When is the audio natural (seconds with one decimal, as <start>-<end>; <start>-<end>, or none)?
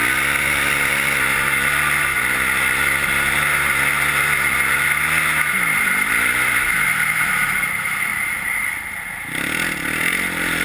0.0-10.6